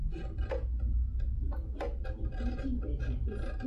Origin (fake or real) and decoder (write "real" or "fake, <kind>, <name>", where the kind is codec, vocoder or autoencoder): real